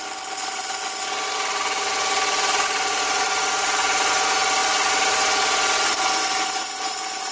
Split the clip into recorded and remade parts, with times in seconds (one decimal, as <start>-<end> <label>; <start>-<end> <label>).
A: 0.0-7.3 recorded